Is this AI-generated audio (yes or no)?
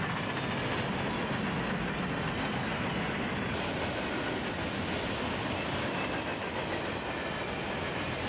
no